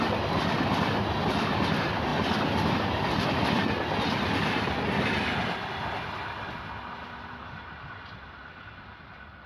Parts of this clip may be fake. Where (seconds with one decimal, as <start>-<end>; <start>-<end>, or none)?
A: none